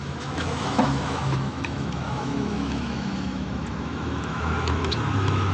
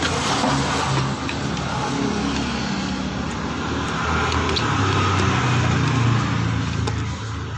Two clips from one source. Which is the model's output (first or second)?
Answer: first